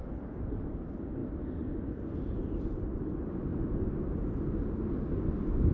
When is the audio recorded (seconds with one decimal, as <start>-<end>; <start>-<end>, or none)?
0.0-5.7